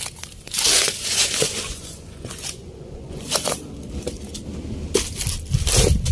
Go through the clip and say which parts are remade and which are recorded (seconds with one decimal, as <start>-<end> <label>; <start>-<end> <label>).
0.0-0.7 recorded; 0.7-3.7 remade; 3.7-6.1 recorded